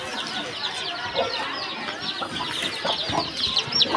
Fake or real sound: real